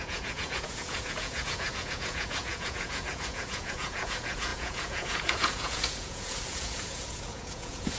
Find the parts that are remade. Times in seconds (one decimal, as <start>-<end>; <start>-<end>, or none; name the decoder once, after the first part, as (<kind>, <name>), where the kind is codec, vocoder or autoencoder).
0.0-8.0 (vocoder, Vocos)